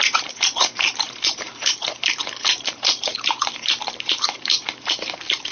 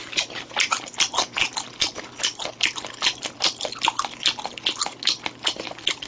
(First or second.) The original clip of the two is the second